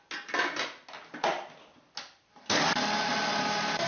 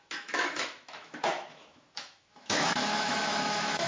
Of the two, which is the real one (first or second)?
first